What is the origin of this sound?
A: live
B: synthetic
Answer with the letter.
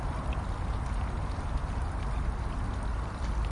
B